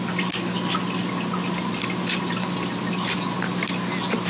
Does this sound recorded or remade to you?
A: recorded